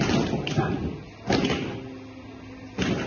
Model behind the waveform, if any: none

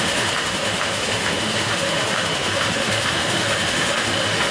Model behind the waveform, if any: autoencoder, DAC-VAE